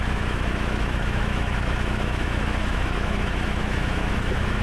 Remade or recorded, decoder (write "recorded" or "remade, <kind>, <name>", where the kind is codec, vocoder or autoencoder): remade, autoencoder, DAC-VAE